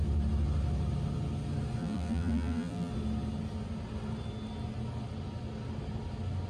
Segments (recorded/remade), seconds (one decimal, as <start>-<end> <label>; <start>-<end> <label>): 0.0-1.8 recorded; 1.8-2.9 remade; 2.9-6.5 recorded